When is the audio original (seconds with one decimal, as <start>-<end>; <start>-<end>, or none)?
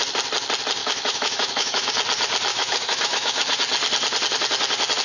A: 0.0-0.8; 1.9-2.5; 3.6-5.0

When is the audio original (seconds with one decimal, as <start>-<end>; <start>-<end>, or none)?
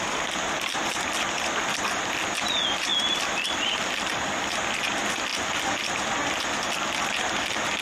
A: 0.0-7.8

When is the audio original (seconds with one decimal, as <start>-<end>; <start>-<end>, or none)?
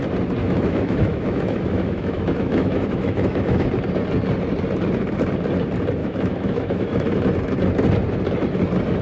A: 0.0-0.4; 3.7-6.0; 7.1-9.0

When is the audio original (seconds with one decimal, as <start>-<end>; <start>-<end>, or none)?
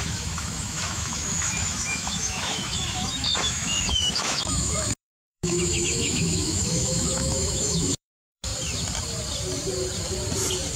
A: 8.5-10.8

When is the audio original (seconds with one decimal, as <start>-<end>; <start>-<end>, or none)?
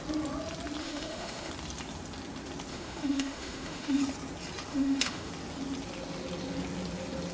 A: 0.0-0.8; 1.5-2.7; 4.0-4.7; 5.3-7.3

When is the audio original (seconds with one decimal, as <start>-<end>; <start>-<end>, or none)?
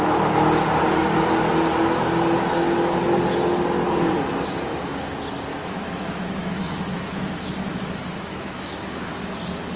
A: 0.0-5.5; 9.1-9.8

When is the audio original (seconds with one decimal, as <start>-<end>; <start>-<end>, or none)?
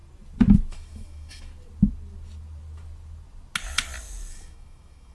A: 0.0-0.7; 1.5-4.3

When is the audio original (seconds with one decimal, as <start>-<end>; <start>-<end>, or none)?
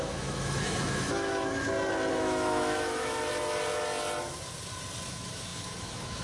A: 1.5-2.1; 3.1-5.1